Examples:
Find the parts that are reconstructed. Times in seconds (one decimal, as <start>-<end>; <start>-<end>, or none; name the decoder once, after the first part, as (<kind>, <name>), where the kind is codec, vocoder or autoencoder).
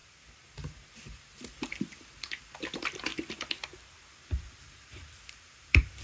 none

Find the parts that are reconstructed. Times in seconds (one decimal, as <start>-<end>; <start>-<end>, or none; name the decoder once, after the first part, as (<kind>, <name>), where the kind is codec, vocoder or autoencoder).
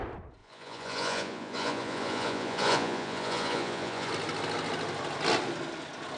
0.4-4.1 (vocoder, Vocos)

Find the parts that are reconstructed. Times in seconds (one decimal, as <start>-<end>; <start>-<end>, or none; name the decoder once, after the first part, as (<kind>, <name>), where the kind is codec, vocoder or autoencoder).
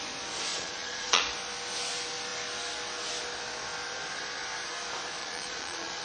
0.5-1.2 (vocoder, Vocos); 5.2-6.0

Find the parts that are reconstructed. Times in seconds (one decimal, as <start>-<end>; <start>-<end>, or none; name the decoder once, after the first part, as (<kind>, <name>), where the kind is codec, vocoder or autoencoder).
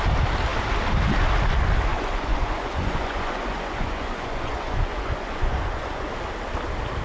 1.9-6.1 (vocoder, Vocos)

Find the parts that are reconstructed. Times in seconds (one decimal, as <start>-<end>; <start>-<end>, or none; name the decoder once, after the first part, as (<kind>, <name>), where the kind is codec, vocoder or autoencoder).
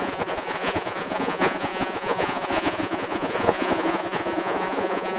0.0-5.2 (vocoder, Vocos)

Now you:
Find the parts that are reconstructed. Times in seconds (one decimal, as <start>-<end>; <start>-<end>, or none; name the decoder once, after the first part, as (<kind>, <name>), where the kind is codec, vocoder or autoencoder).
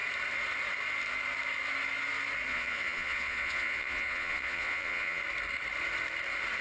2.5-5.2 (vocoder, Vocos)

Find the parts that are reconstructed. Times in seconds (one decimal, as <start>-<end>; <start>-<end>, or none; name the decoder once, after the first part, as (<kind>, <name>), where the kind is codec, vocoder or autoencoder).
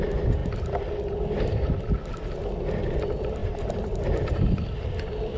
none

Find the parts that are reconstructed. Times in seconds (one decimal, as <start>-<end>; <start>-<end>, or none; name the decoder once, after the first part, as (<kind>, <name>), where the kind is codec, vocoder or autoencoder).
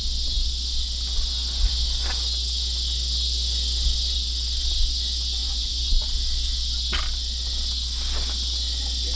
5.4-6.1 (vocoder, Vocos)